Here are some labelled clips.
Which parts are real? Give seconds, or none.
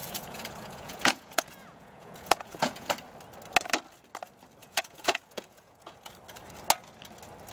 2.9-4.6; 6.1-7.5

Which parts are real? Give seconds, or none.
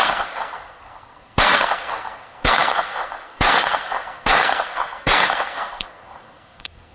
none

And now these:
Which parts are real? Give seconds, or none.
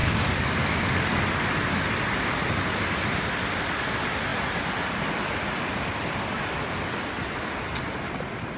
1.2-8.6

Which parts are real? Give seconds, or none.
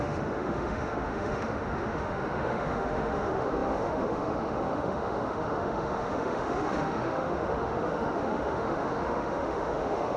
none